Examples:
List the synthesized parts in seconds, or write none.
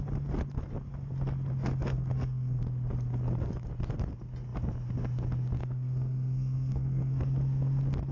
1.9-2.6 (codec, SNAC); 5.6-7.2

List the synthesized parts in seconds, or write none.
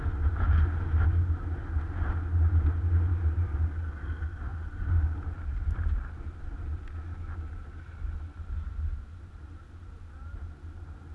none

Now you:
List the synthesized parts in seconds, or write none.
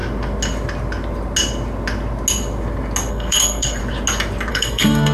3.1-3.8 (codec, SNAC); 4.5-5.1